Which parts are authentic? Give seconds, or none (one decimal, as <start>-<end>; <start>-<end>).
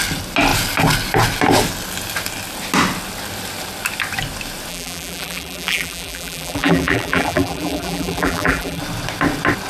0.0-4.7; 8.8-9.7